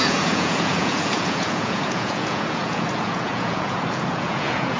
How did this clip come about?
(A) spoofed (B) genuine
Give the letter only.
A